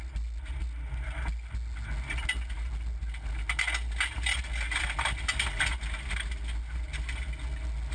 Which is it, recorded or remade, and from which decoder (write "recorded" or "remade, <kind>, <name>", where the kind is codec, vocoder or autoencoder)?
recorded